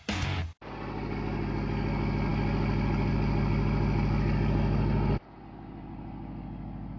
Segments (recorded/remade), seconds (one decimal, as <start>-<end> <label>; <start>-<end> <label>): 0.0-7.0 recorded